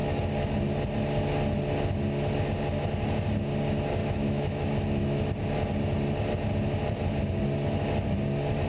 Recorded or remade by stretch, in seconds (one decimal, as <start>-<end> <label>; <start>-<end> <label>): 0.0-0.6 remade; 0.6-4.0 recorded; 4.0-5.2 remade; 5.2-8.7 recorded